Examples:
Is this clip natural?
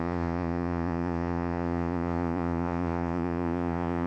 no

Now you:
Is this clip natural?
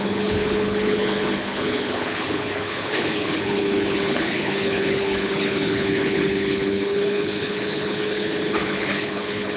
no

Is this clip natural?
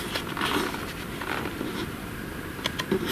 yes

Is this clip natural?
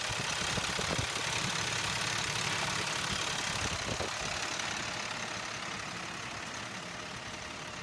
yes